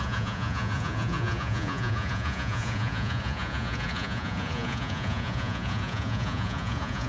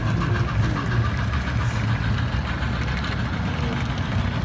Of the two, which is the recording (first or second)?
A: second